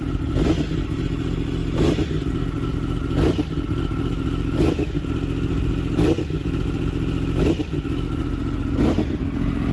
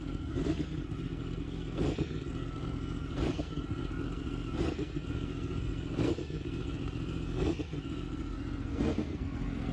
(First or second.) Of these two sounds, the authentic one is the first